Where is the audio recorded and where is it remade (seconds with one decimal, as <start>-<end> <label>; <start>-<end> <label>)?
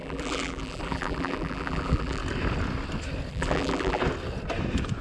0.0-2.2 remade; 2.2-3.3 recorded; 3.3-4.0 remade; 4.0-5.0 recorded